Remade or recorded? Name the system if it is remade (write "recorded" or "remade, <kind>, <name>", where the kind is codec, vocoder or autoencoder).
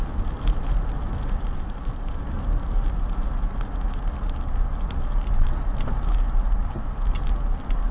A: recorded